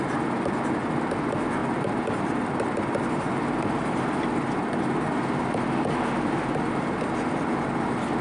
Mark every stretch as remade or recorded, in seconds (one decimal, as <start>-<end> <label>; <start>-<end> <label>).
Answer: 0.0-1.6 recorded; 1.6-2.5 remade; 2.5-8.2 recorded